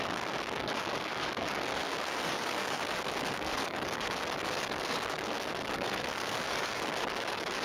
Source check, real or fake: fake